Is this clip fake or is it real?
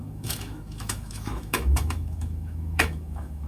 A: fake